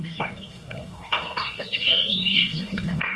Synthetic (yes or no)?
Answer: yes